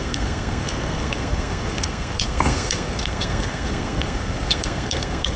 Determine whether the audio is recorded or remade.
remade